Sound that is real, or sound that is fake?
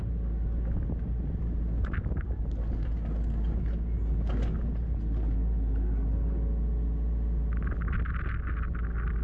real